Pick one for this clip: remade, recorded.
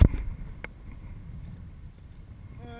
recorded